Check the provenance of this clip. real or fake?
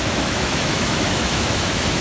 fake